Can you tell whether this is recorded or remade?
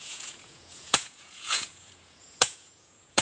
remade